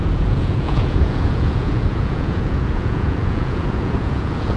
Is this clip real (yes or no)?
no